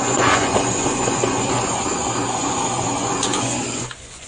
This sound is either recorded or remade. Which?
remade